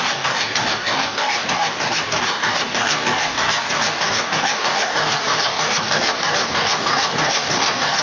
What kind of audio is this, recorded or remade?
remade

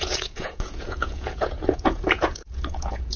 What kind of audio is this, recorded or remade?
remade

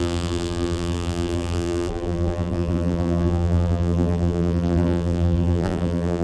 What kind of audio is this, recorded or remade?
remade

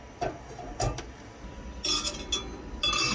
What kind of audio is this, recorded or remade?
recorded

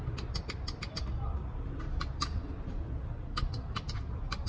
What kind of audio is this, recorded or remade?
remade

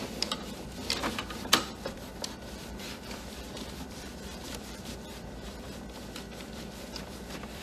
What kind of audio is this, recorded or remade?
remade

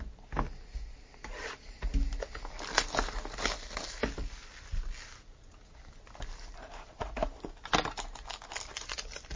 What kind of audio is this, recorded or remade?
recorded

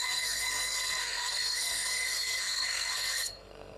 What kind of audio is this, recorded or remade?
remade